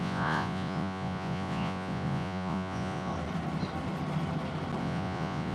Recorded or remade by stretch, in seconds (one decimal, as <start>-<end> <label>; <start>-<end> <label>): 0.0-3.1 remade; 3.1-4.8 recorded; 4.8-5.5 remade